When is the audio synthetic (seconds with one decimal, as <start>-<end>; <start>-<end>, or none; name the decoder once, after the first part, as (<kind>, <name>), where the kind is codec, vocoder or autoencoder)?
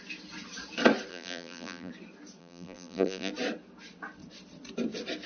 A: 1.1-1.9 (vocoder, BigVGAN v2); 2.4-3.3